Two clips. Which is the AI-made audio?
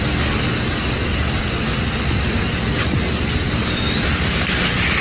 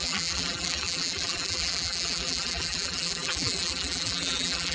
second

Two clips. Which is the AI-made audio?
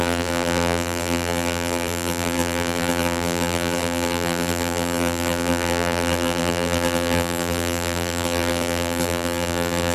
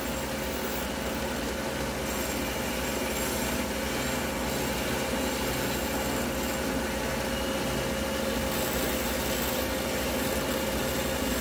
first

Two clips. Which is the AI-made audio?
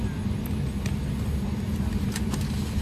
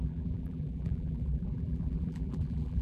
second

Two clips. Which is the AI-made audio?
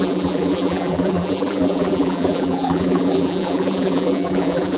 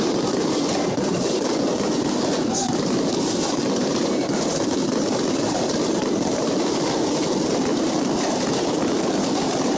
first